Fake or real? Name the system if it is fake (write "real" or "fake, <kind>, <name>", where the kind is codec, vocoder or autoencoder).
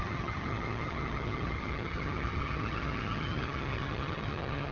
fake, vocoder, HiFi-GAN